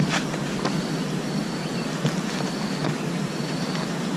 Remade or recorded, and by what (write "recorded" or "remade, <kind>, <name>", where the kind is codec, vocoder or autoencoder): recorded